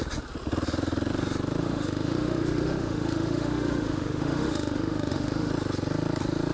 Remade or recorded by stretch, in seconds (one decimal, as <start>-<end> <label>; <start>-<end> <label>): 0.0-1.6 recorded; 1.6-5.5 remade; 5.5-6.5 recorded